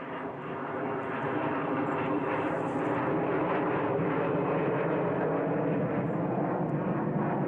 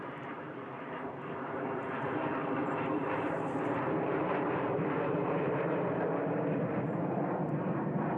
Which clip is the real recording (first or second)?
first